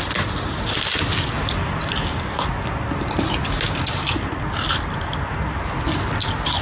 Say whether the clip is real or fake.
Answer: real